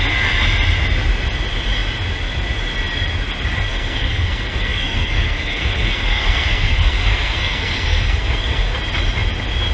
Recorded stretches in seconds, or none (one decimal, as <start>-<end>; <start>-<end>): 0.0-3.7; 8.8-9.7